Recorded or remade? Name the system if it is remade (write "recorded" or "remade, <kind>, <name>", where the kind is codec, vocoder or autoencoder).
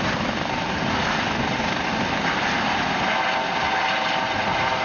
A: recorded